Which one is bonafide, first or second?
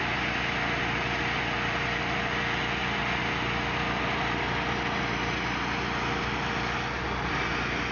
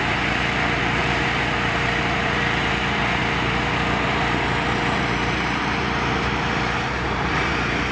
first